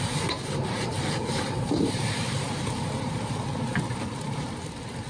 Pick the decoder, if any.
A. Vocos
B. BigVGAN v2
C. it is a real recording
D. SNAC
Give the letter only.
B